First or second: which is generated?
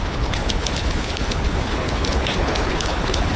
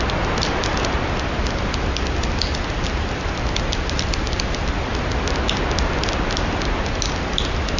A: first